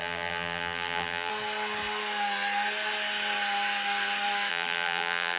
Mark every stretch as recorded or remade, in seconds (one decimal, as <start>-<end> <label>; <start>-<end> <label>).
0.0-1.3 remade; 1.3-4.5 recorded; 4.5-5.4 remade